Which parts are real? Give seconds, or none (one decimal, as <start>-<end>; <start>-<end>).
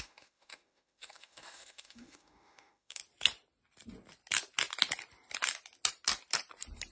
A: 3.0-6.9